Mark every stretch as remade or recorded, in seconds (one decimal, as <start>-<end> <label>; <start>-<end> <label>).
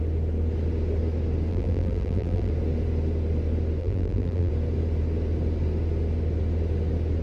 0.0-1.5 recorded; 1.5-2.5 remade; 2.5-3.8 recorded; 3.8-4.5 remade; 4.5-7.2 recorded